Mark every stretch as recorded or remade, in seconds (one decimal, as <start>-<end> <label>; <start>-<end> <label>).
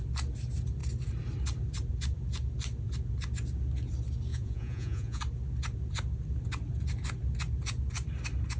0.0-4.3 recorded; 4.3-5.2 remade; 5.2-8.6 recorded